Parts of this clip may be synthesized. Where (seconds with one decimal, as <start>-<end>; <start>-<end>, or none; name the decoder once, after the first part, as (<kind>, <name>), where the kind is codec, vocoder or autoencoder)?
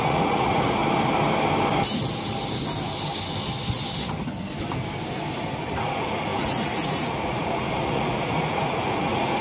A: 0.0-0.8 (vocoder, Vocos); 5.6-9.4